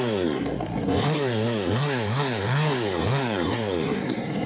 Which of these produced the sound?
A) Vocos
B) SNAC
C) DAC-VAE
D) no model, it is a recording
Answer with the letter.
B